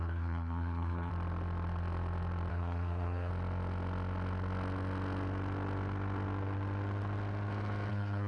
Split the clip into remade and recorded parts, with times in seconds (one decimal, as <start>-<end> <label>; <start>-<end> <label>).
0.0-1.1 remade; 1.1-2.5 recorded; 2.5-3.3 remade; 3.3-7.9 recorded; 7.9-8.3 remade